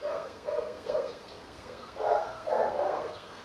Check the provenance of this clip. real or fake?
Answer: fake